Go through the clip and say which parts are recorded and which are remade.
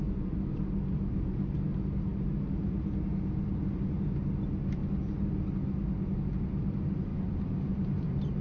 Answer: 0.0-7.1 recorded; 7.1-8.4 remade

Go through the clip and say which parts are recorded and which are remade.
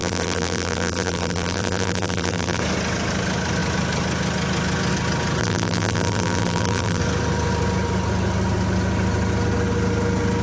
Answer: 0.0-2.6 remade; 2.6-5.4 recorded; 5.4-7.0 remade; 7.0-10.4 recorded